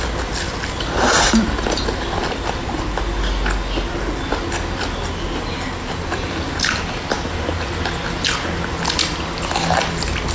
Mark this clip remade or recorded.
recorded